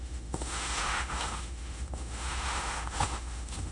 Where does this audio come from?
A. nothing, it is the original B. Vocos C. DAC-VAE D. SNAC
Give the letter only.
C